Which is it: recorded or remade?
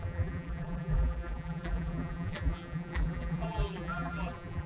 remade